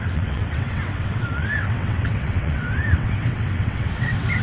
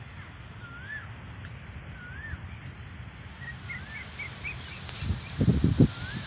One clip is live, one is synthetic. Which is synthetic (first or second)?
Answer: first